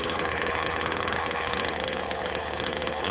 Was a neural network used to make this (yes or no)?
yes